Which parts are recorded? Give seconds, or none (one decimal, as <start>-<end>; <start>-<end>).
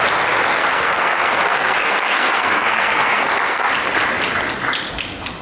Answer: 0.0-0.5; 3.7-5.4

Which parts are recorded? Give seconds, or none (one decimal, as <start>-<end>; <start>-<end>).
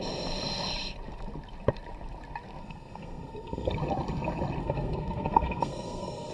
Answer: 0.0-2.6; 3.7-4.6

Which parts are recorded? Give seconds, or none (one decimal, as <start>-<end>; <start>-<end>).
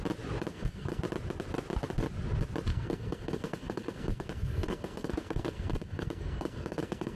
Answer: 0.0-0.5; 1.0-2.7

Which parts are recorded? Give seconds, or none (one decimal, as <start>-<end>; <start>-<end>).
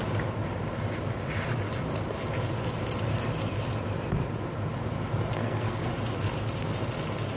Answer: 0.0-5.3; 5.9-7.4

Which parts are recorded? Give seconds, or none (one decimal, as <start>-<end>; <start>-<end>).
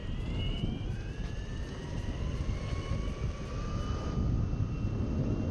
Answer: 0.6-5.5